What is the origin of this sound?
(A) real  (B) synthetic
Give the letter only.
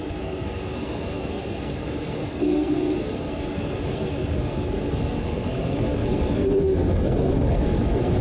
B